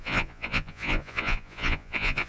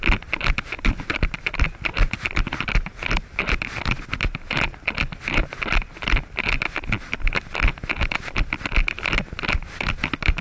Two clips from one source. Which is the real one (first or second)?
second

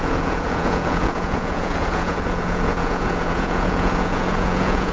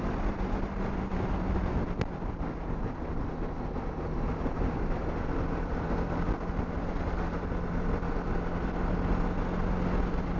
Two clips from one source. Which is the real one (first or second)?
second